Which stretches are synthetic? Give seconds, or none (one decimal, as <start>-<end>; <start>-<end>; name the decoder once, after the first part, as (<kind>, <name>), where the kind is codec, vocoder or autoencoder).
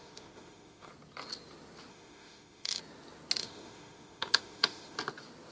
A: 0.0-0.9 (autoencoder, DAC-VAE); 1.9-2.8; 3.4-5.0